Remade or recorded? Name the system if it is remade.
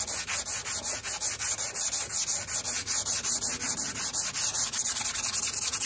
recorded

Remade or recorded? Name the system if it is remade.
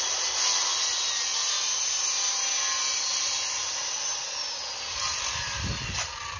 recorded